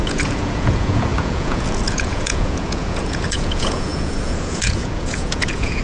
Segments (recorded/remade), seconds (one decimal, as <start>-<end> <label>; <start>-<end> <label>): 0.0-5.8 remade